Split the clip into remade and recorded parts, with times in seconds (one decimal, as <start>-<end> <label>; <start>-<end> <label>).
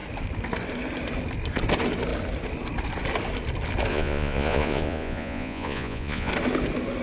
0.0-3.9 recorded; 3.9-6.3 remade; 6.3-7.0 recorded